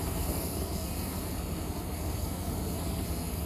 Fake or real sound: fake